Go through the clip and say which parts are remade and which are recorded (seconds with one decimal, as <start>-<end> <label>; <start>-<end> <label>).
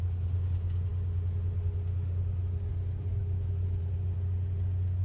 0.0-5.0 recorded